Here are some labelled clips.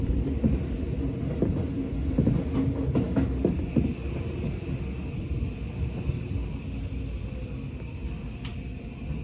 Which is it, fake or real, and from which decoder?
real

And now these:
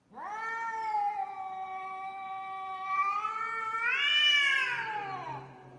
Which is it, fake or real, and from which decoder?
real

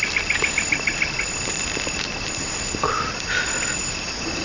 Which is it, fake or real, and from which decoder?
real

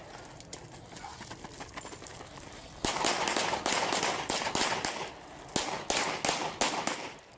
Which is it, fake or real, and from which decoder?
real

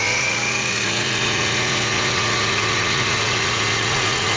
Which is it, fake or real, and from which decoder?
fake, vocoder, Vocos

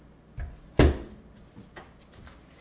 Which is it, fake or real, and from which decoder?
real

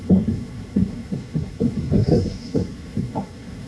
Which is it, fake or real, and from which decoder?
fake, codec, SNAC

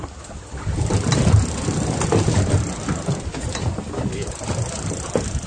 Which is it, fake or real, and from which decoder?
real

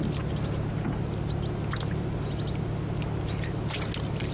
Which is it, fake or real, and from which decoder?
real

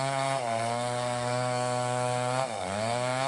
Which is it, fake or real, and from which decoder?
fake, codec, SNAC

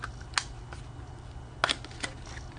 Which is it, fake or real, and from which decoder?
real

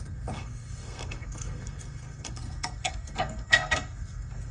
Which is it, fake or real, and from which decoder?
fake, codec, SNAC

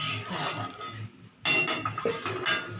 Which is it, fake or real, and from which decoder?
real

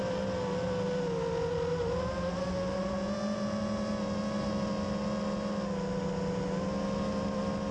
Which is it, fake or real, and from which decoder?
real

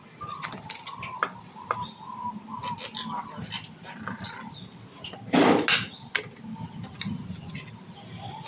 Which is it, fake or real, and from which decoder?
real